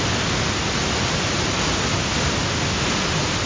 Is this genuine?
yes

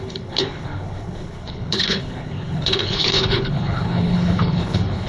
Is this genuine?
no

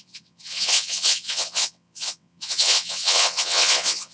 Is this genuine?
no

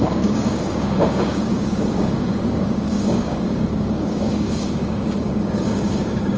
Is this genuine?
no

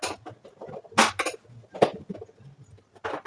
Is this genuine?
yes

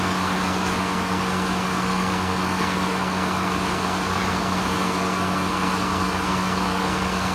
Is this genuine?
no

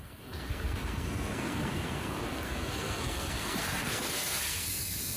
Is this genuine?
no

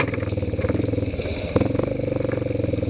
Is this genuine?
yes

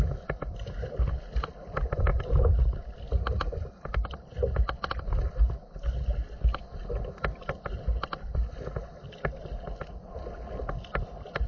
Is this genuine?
yes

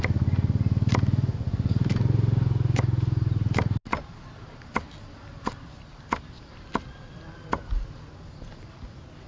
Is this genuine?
yes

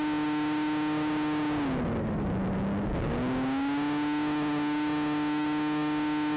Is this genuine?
yes